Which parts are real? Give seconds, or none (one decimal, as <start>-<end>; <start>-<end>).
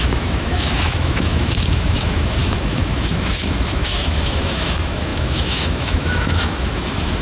none